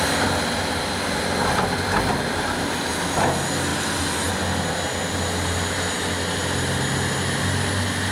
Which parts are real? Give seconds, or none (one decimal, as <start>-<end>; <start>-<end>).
0.0-8.1